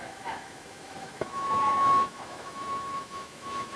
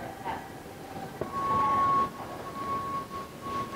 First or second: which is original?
second